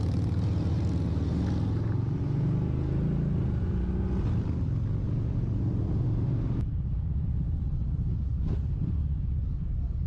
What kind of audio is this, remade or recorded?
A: recorded